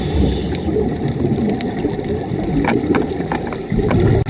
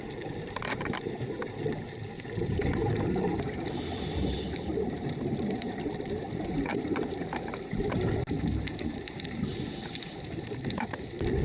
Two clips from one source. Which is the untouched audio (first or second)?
first